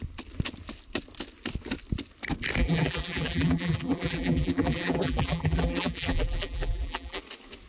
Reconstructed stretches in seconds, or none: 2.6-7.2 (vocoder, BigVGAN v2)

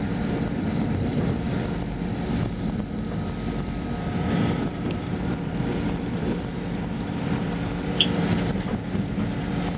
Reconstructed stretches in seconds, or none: 0.0-9.8 (vocoder, BigVGAN v2)

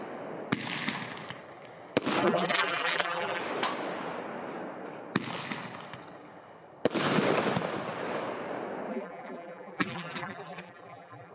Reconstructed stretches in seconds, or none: 2.2-3.4 (vocoder, BigVGAN v2); 8.9-11.3

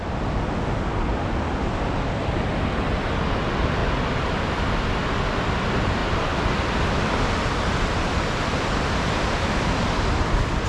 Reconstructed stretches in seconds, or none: none

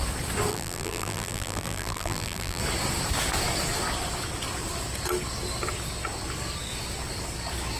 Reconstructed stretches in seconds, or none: 0.5-2.6 (vocoder, BigVGAN v2)

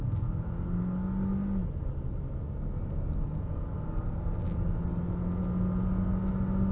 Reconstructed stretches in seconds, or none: none